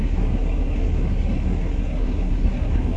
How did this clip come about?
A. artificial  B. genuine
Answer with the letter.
A